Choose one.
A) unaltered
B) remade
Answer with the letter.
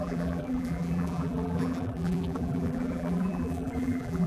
B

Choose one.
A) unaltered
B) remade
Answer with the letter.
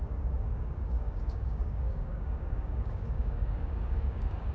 B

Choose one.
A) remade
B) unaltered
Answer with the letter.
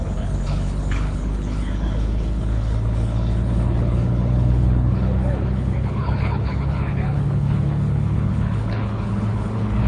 A